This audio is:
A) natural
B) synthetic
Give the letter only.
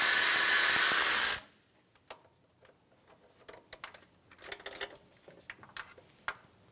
A